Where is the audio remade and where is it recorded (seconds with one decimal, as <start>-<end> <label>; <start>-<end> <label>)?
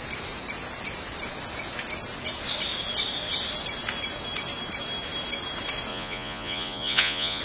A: 0.0-5.9 recorded; 5.9-7.4 remade